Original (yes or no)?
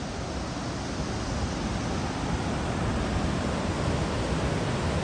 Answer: yes